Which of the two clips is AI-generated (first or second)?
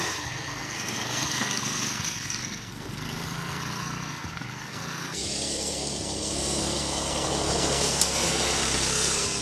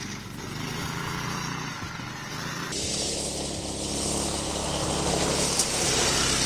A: first